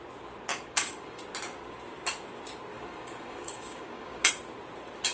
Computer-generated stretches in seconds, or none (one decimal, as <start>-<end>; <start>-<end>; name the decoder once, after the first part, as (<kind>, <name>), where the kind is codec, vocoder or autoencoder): 0.5-1.2 (codec, DAC); 2.7-4.3